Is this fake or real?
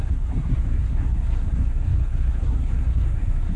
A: fake